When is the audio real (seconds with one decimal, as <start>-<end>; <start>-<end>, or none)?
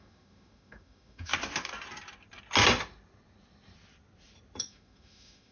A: 1.3-4.6